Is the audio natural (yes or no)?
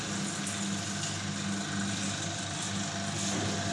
yes